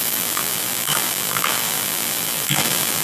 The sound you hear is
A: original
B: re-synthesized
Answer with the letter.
B